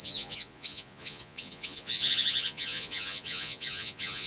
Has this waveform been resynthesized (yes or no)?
yes